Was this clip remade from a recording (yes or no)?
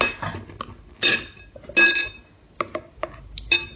no